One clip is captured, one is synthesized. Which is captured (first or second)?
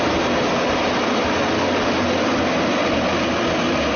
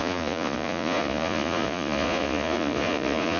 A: first